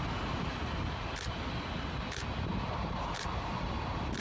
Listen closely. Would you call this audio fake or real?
real